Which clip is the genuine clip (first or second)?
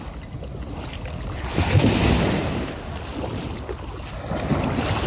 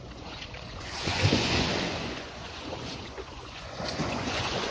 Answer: first